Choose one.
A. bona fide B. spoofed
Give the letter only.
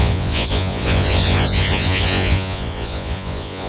B